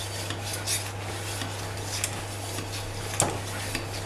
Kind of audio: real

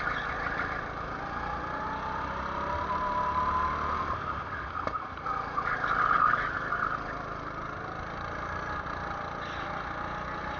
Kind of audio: real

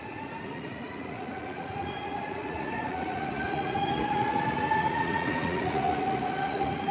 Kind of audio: fake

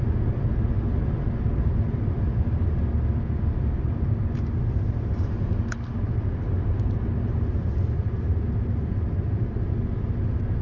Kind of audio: real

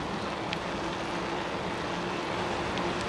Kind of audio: real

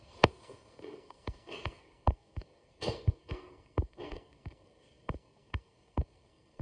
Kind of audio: fake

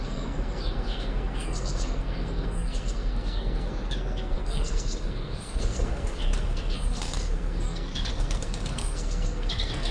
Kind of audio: fake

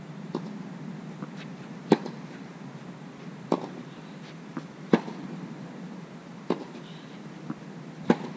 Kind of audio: fake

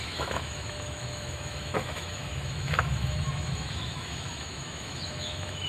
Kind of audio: fake